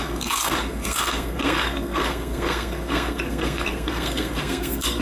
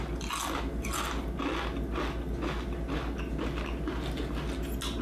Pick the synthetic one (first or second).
first